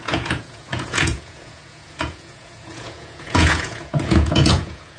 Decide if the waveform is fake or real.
fake